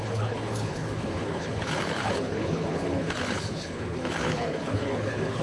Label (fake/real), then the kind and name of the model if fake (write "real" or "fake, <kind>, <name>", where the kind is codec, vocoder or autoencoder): fake, codec, HILCodec